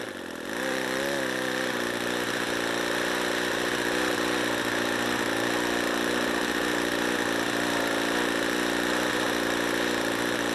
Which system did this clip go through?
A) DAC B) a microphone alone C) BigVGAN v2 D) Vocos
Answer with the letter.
C